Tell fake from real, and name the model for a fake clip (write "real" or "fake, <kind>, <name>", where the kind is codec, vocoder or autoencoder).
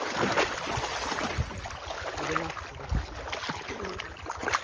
real